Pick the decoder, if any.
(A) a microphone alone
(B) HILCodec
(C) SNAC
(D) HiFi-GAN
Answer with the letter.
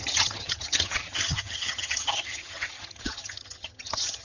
D